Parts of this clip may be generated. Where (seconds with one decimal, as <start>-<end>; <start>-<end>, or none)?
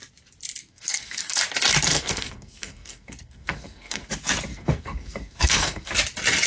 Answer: 0.6-1.4; 1.9-4.1; 4.5-5.9